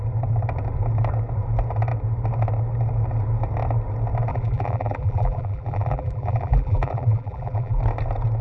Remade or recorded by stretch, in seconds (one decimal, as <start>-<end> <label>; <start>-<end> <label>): 0.0-4.3 recorded; 4.3-7.8 remade; 7.8-8.4 recorded